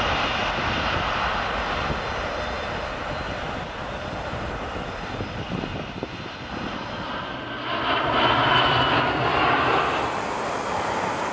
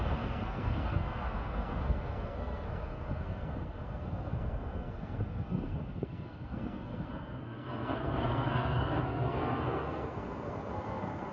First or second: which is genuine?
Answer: first